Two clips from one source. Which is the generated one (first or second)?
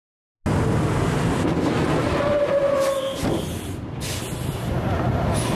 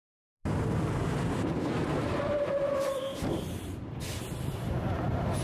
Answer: second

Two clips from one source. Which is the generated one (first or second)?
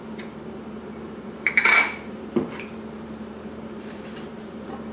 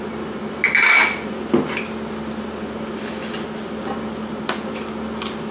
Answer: first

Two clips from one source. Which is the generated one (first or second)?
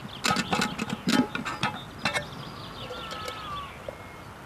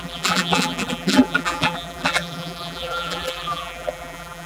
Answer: second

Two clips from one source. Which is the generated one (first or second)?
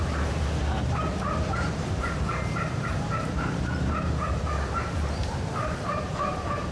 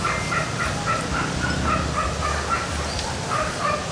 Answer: first